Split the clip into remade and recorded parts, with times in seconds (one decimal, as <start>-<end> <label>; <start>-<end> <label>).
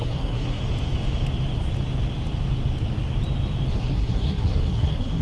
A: 0.0-0.6 remade; 0.6-3.7 recorded; 3.7-5.2 remade